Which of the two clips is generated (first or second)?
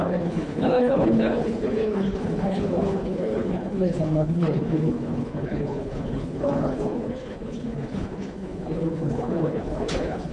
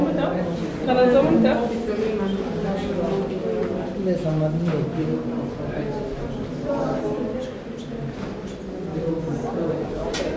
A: first